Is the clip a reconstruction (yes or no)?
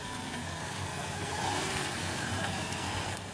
yes